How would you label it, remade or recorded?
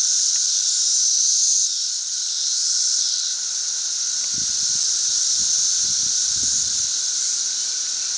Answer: recorded